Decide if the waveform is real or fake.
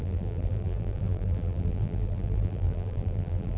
fake